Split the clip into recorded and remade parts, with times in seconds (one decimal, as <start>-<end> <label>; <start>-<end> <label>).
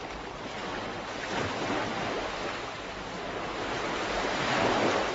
0.0-5.1 recorded